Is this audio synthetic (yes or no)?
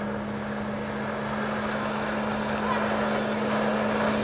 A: no